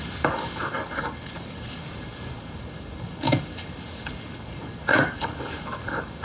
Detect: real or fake fake